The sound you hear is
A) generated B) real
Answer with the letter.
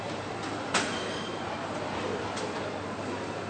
A